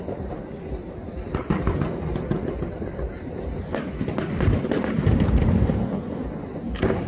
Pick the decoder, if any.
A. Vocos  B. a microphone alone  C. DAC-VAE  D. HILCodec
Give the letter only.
B